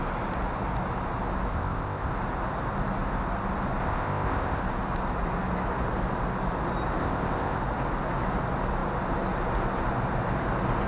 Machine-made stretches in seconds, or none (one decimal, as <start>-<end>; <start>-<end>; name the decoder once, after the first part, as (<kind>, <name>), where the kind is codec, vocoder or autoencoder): 1.5-2.1 (codec, ZipCodec); 3.8-4.6; 7.0-7.6